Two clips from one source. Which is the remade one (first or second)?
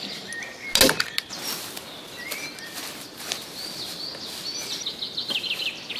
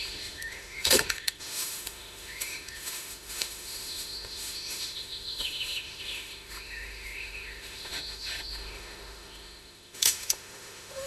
second